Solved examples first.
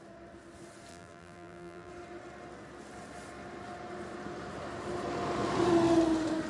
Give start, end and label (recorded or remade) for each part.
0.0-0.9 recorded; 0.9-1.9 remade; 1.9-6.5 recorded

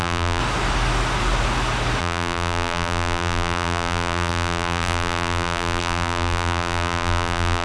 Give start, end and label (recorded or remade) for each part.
0.0-0.4 remade; 0.4-2.0 recorded; 2.0-7.6 remade

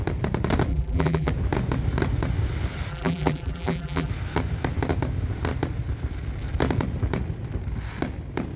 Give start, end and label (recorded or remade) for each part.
0.0-0.7 recorded; 0.7-1.3 remade; 1.3-2.9 recorded; 2.9-4.1 remade; 4.1-8.6 recorded

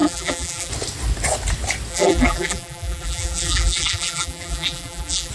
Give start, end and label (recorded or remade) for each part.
0.0-0.7 remade; 0.7-1.9 recorded; 1.9-5.3 remade

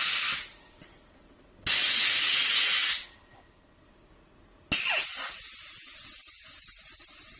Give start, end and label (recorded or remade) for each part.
0.0-7.4 recorded

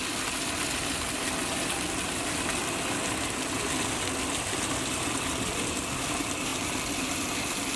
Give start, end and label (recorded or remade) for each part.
0.0-7.8 recorded

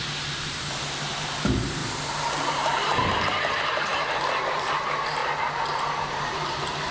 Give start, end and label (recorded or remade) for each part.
0.0-1.8 remade; 1.8-2.5 recorded; 2.5-5.2 remade; 5.2-6.0 recorded; 6.0-6.9 remade

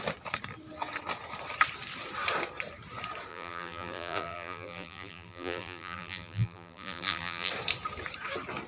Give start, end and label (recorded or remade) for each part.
0.0-3.3 recorded; 3.3-7.5 remade; 7.5-8.7 recorded